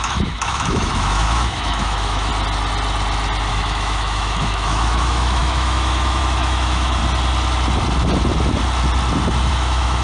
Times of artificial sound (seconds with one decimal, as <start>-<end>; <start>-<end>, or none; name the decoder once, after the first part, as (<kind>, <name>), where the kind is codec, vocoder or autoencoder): 0.0-2.3 (autoencoder, DAC-VAE); 3.5-7.0; 9.5-10.0